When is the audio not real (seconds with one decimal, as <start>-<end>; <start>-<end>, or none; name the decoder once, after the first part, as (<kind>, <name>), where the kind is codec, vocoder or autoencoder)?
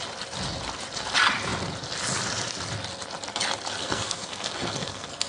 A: 3.8-5.3 (codec, SNAC)